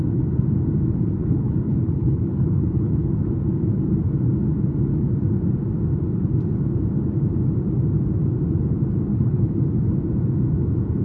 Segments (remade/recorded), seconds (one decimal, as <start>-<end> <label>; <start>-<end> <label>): 0.0-1.2 recorded; 1.2-3.3 remade; 3.3-9.1 recorded; 9.1-9.6 remade; 9.6-11.0 recorded

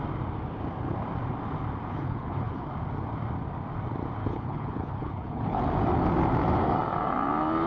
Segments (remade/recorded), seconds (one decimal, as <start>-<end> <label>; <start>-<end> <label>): 0.0-1.9 recorded; 1.9-2.7 remade; 2.7-4.2 recorded; 4.2-5.6 remade; 5.6-7.7 recorded

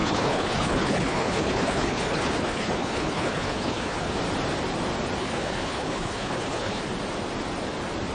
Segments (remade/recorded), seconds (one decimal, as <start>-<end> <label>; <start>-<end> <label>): 0.0-4.2 remade; 4.2-5.2 recorded; 5.2-6.8 remade; 6.8-8.1 recorded

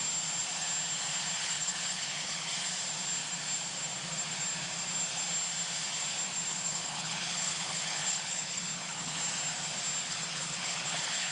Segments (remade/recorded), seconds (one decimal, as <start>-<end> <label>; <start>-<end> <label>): 0.0-1.4 recorded; 1.4-2.5 remade; 2.5-6.5 recorded; 6.5-9.2 remade; 9.2-10.0 recorded; 10.0-11.3 remade